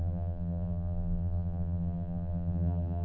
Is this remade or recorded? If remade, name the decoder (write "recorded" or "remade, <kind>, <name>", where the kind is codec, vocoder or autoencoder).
remade, vocoder, BigVGAN v2